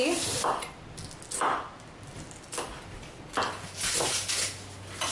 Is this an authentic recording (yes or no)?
yes